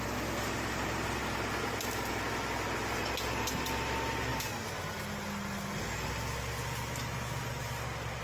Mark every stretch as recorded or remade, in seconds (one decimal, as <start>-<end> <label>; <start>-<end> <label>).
0.0-8.2 recorded